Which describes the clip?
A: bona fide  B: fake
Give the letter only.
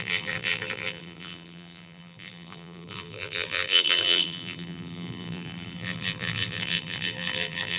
B